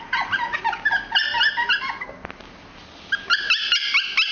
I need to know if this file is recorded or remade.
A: recorded